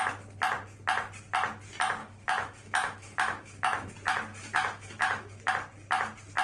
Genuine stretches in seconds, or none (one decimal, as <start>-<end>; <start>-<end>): 0.0-2.0; 3.9-4.3; 5.5-6.4